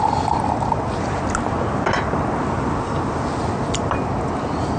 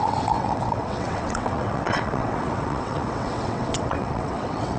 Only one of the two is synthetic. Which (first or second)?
second